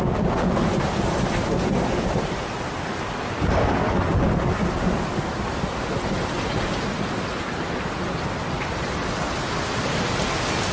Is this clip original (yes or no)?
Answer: yes